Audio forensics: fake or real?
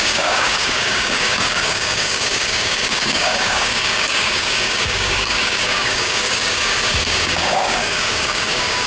fake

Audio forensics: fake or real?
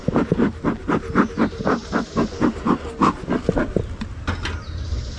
real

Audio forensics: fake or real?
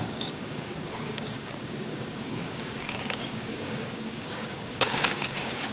fake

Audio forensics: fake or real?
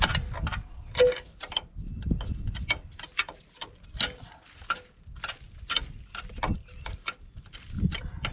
real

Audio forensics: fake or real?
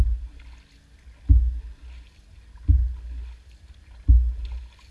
real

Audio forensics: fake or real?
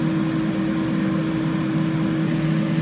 real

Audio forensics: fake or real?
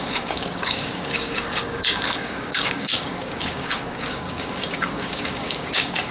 fake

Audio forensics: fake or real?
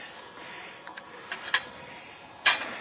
real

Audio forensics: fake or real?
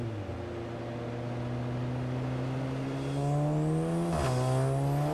real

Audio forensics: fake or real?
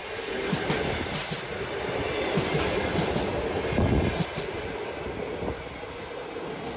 real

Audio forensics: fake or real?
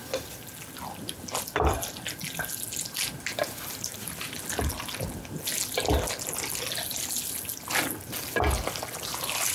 real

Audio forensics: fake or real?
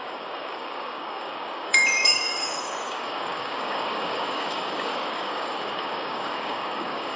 fake